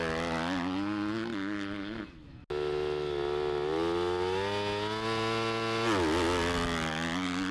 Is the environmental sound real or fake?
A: real